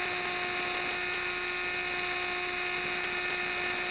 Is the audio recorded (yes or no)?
yes